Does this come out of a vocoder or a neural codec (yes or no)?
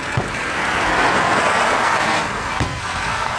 yes